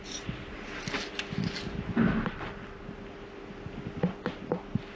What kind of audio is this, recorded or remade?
recorded